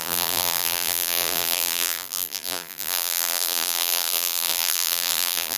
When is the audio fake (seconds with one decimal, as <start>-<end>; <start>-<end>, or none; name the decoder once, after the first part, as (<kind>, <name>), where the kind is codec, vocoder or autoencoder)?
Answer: 0.0-5.6 (vocoder, BigVGAN v2)